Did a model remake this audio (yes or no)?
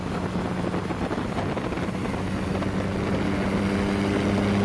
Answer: no